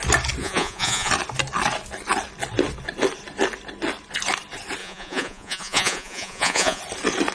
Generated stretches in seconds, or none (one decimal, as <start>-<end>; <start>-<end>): 0.4-1.1; 4.8-6.8